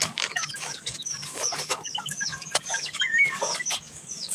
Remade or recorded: remade